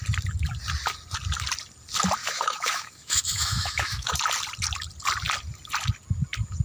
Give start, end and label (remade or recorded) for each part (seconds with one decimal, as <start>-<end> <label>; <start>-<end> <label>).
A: 0.0-2.2 recorded; 2.2-4.1 remade; 4.1-6.6 recorded